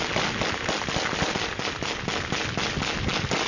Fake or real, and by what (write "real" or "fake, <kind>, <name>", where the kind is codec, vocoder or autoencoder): real